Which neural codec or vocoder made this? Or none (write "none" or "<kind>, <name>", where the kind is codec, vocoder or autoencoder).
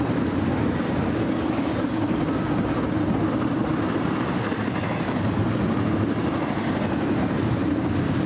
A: none